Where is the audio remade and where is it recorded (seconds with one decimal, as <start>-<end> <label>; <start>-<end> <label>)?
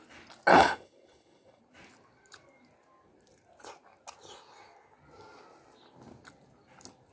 0.0-0.5 recorded; 0.5-1.6 remade; 1.6-7.1 recorded